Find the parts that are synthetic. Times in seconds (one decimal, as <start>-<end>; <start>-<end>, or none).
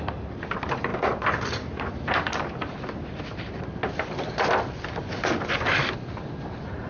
0.0-6.9